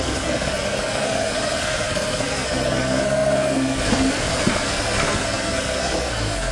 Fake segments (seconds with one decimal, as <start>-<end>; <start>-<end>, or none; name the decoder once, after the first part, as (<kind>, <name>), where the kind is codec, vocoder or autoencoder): 0.0-6.5 (codec, SNAC)